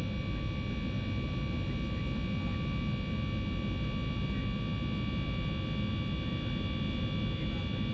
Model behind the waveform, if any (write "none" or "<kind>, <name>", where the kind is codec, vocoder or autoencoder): none